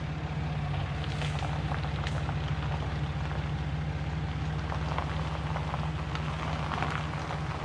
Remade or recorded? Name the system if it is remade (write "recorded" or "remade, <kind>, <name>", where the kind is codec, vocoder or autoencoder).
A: recorded